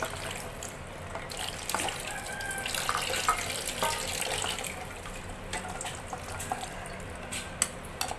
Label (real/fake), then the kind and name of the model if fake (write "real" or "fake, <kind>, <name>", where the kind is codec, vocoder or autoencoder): real